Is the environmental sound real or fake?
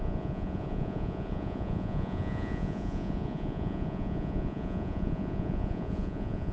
fake